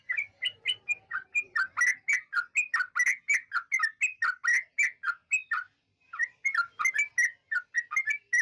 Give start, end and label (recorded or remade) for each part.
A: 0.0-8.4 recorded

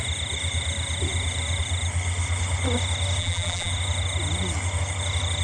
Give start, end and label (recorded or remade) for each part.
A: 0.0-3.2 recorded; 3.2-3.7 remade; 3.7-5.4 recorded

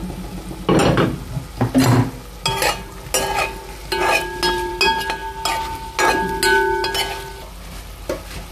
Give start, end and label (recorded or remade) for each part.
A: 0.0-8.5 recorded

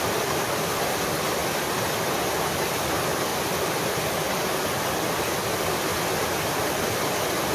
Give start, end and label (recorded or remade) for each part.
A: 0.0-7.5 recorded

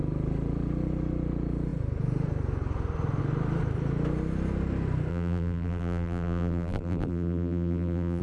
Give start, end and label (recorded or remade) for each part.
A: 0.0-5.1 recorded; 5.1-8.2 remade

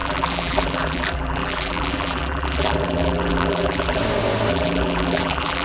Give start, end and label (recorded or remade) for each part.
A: 0.0-4.0 remade; 4.0-4.5 recorded; 4.5-5.6 remade

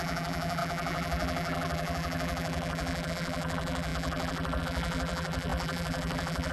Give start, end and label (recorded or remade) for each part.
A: 0.0-6.5 remade

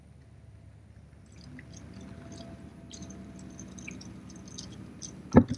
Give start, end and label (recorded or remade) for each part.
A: 0.0-2.7 recorded; 2.7-3.3 remade; 3.3-5.6 recorded